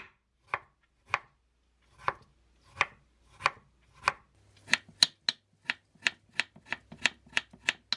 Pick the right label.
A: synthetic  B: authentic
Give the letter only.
B